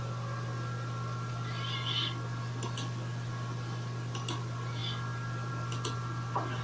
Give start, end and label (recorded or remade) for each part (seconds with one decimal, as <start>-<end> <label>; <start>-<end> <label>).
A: 0.0-6.6 recorded